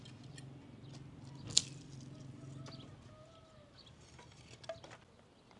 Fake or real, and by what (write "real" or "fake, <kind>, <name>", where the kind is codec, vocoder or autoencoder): real